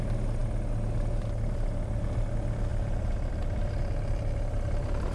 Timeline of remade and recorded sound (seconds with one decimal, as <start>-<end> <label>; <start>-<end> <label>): 0.0-5.1 recorded